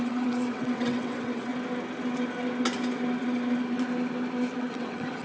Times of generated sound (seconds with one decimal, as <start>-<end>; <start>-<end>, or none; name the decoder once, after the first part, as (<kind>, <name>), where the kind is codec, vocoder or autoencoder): 0.0-1.5 (vocoder, WaveNeXt); 4.6-5.2